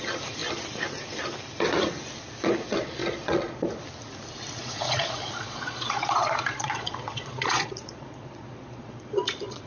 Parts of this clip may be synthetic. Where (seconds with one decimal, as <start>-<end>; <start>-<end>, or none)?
3.0-3.7; 4.6-9.7